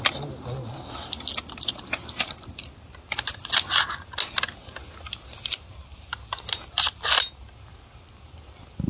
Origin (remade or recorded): recorded